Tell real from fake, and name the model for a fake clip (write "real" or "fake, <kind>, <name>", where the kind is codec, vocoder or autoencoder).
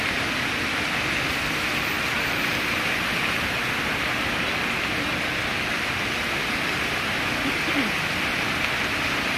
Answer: real